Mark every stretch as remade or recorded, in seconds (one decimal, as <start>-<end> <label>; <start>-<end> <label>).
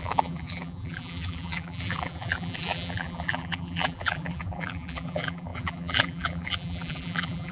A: 0.0-7.5 remade